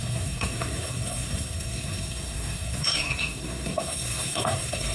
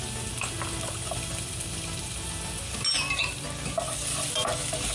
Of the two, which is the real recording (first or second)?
second